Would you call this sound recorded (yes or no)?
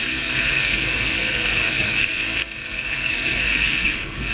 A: no